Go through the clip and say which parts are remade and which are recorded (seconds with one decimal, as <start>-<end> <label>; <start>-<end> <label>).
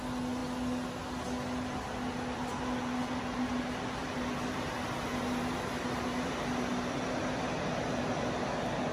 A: 0.0-8.9 recorded